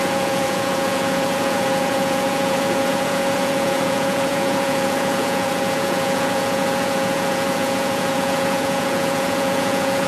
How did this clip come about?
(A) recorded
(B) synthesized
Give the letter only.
B